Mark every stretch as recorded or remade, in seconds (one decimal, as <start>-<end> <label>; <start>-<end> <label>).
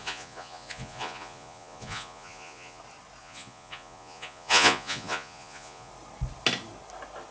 0.0-2.8 remade; 2.8-3.2 recorded; 3.2-5.9 remade; 5.9-7.3 recorded